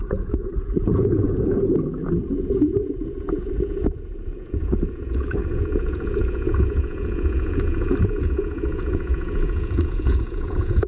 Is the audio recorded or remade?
remade